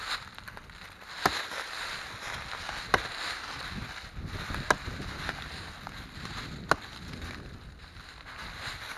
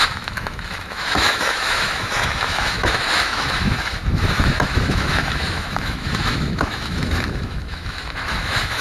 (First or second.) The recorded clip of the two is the first